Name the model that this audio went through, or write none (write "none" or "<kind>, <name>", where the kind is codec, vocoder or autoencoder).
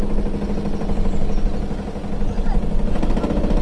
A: none